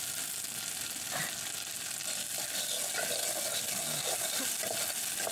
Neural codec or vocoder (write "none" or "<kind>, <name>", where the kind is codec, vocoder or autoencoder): none